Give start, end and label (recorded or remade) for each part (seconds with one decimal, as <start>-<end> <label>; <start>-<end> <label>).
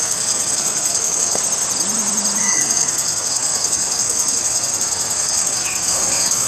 0.0-1.4 remade; 1.4-2.4 recorded; 2.4-6.5 remade